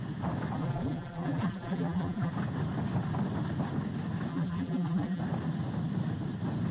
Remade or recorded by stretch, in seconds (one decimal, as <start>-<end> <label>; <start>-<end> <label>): 0.0-0.6 recorded; 0.6-2.3 remade; 2.3-4.3 recorded; 4.3-5.2 remade; 5.2-6.7 recorded